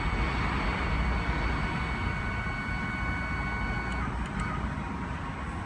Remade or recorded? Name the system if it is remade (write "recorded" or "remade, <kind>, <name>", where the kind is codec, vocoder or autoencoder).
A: recorded